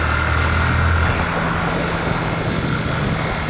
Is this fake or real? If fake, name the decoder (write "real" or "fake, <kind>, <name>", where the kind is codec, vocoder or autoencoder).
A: real